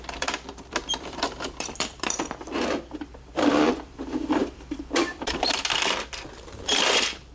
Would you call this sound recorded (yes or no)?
no